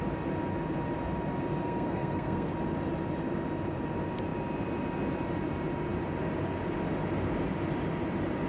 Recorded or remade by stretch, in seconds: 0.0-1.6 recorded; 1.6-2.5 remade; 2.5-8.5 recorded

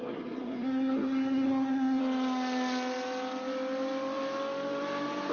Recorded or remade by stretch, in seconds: 0.0-2.0 remade; 2.0-5.3 recorded

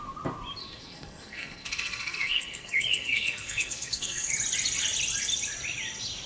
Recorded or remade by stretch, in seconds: 0.0-0.6 recorded; 0.6-4.3 remade; 4.3-6.3 recorded

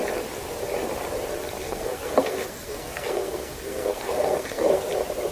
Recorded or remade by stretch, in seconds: 0.0-1.6 recorded; 1.6-4.8 remade; 4.8-5.3 recorded